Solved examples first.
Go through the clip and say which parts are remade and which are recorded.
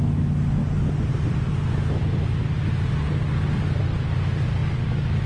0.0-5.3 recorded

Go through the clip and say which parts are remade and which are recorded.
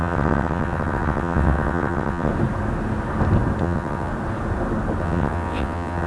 0.0-2.3 remade; 2.3-3.6 recorded; 3.6-4.1 remade; 4.1-5.0 recorded; 5.0-6.1 remade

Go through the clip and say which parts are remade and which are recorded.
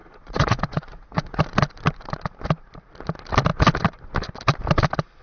0.0-1.4 remade; 1.4-5.2 recorded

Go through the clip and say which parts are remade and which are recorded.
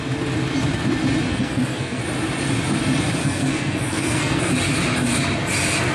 0.0-1.3 recorded; 1.3-2.0 remade; 2.0-3.2 recorded; 3.2-4.5 remade; 4.5-5.9 recorded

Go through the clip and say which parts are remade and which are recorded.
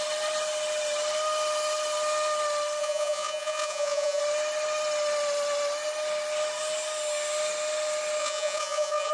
0.0-2.8 recorded; 2.8-4.2 remade; 4.2-8.2 recorded; 8.2-9.1 remade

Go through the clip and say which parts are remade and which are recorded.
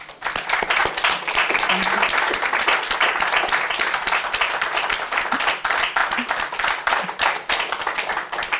0.0-0.8 recorded; 0.8-1.7 remade; 1.7-8.6 recorded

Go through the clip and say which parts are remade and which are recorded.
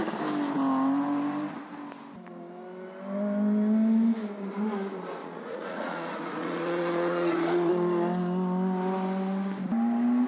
0.0-5.2 recorded; 5.2-7.7 remade; 7.7-10.3 recorded